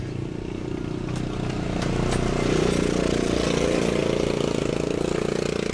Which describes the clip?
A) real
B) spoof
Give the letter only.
A